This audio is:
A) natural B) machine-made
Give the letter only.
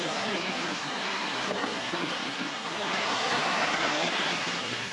B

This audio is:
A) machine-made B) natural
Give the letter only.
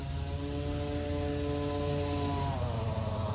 B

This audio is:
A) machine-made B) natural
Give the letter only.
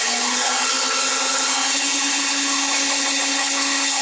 A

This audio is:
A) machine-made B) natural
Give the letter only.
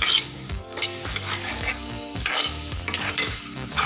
A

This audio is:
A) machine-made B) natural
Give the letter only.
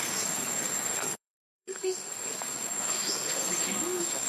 A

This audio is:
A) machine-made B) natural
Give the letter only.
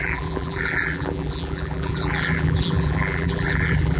A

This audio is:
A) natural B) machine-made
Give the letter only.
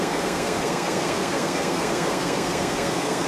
B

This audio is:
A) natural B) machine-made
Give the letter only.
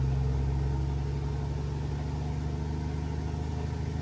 A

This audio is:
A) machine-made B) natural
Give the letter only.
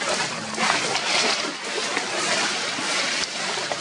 B